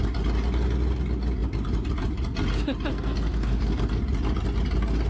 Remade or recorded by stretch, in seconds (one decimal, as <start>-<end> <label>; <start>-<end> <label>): 0.0-2.9 recorded; 2.9-4.0 remade; 4.0-5.1 recorded